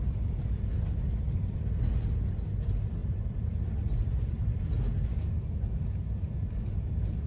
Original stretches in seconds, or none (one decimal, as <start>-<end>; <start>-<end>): 0.0-7.3